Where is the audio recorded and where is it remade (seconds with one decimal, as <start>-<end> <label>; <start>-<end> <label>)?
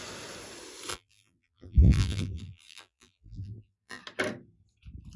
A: 0.0-0.9 recorded; 0.9-4.0 remade; 4.0-5.2 recorded